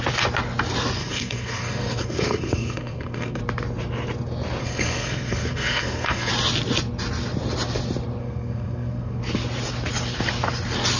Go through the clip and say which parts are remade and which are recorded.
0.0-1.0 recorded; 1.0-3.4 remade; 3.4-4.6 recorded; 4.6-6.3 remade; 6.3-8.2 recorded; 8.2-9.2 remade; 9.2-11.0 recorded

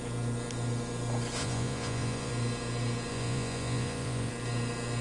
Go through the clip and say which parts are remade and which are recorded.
0.0-1.4 recorded; 1.4-2.3 remade; 2.3-3.1 recorded; 3.1-4.3 remade; 4.3-5.0 recorded

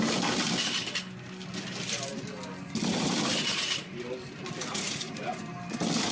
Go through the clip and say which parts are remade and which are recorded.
0.0-4.7 recorded; 4.7-5.4 remade; 5.4-6.1 recorded